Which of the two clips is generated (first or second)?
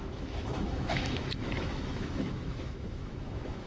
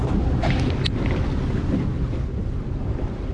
first